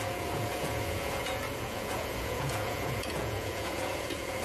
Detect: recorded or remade remade